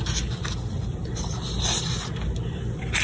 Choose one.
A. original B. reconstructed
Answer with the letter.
A